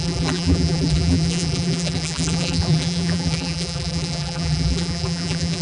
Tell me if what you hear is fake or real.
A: fake